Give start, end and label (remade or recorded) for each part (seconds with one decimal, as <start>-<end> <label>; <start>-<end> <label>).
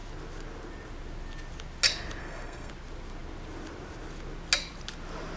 0.0-2.2 recorded; 2.2-2.7 remade; 2.7-5.4 recorded